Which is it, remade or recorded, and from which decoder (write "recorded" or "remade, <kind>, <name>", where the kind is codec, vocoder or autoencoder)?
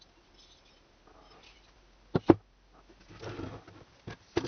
recorded